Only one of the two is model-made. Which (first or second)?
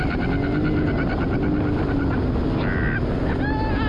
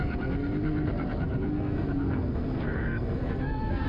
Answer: second